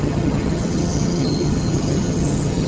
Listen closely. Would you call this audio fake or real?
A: fake